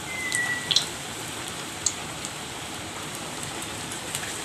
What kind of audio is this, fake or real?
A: fake